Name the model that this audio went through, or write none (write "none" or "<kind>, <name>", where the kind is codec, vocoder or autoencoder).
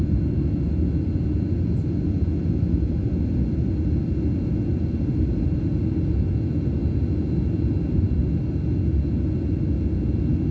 none